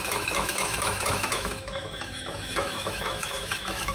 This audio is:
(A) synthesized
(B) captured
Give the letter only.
A